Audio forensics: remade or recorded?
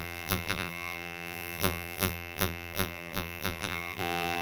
remade